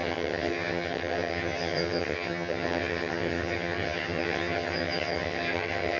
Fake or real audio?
fake